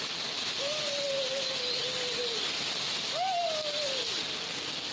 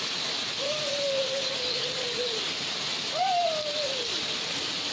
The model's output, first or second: second